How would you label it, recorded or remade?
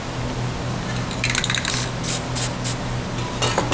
recorded